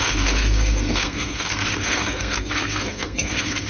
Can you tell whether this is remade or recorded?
remade